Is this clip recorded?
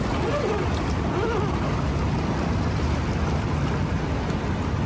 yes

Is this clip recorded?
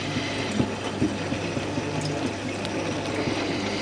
yes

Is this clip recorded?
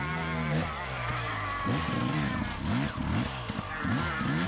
yes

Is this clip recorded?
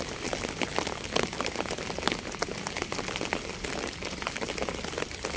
yes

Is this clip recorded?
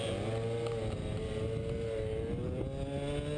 yes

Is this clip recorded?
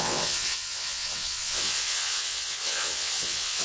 no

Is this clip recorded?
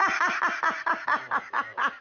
yes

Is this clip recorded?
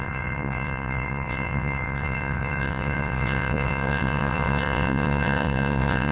no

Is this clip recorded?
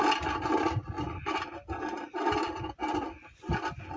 yes